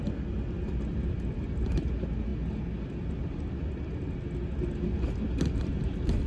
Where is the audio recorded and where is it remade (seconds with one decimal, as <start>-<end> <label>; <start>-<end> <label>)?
0.0-6.3 recorded